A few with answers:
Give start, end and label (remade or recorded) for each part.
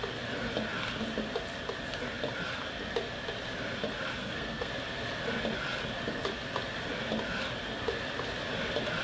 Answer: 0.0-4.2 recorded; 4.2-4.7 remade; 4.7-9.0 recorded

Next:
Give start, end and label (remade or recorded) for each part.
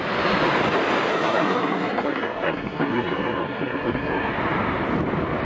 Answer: 0.0-1.1 recorded; 1.1-4.3 remade; 4.3-5.4 recorded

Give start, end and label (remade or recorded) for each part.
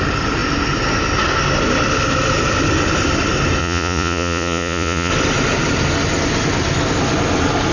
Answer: 0.0-3.6 recorded; 3.6-5.1 remade; 5.1-7.7 recorded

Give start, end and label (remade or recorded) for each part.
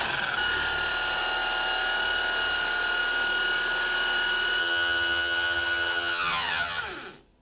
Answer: 0.0-4.6 recorded; 4.6-6.8 remade; 6.8-7.4 recorded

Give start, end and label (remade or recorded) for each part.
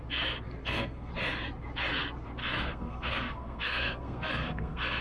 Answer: 0.0-0.6 recorded; 0.6-1.1 remade; 1.1-2.4 recorded; 2.4-5.0 remade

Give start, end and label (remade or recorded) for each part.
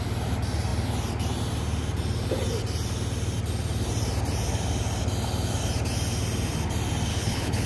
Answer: 0.0-7.1 recorded; 7.1-7.7 remade